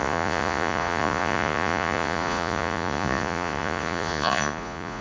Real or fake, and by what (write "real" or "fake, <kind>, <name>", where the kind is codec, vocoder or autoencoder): fake, vocoder, Vocos